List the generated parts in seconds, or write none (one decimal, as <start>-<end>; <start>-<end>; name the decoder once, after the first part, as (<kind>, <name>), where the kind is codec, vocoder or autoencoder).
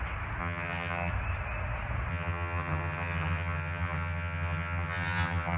0.4-1.1 (vocoder, HiFi-GAN); 2.1-5.6